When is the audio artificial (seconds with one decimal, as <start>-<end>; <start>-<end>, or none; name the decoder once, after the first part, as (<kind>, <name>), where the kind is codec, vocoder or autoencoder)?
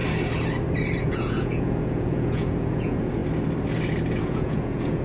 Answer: 1.0-3.2 (vocoder, Vocos); 4.2-5.0